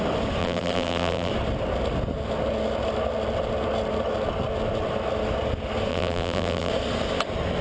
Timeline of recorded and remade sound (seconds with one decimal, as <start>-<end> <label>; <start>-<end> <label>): 0.0-0.4 recorded; 0.4-1.3 remade; 1.3-5.9 recorded; 5.9-6.7 remade; 6.7-7.6 recorded